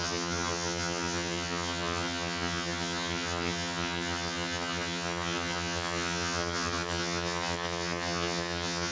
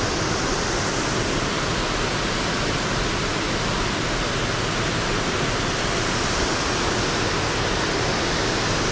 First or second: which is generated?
first